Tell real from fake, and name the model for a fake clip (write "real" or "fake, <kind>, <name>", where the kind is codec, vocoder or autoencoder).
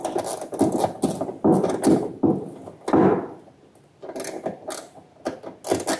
real